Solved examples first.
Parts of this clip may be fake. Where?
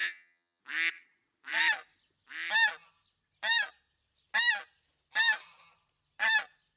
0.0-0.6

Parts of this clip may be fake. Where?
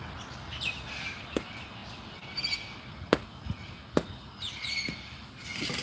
none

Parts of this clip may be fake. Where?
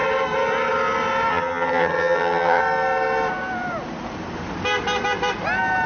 1.3-2.6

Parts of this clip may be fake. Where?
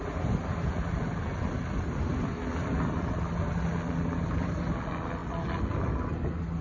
none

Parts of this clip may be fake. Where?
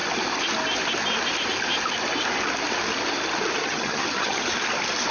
3.6-4.4